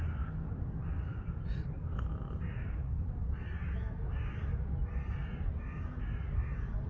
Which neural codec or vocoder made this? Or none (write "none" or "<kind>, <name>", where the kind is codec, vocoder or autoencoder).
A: none